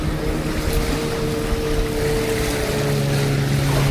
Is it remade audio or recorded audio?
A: recorded